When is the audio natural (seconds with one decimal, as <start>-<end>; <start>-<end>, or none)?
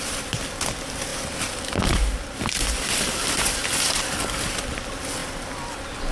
0.0-6.1